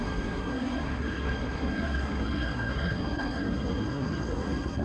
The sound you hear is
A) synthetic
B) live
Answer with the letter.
A